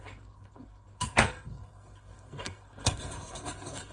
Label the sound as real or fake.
fake